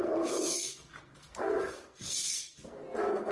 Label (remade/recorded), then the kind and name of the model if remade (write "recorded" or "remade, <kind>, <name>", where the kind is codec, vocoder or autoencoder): remade, codec, SNAC